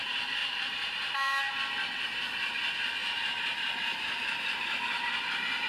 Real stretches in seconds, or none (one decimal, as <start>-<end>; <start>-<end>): 0.0-0.4; 1.5-3.0; 5.3-5.7